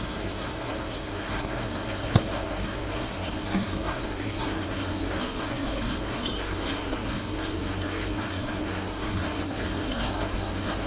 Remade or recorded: remade